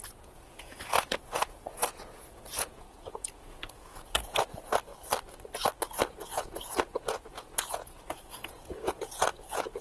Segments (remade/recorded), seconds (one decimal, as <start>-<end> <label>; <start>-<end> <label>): 0.0-4.9 remade; 4.9-6.0 recorded; 6.0-9.8 remade